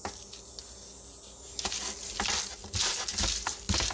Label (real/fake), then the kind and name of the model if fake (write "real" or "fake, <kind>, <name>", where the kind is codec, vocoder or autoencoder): real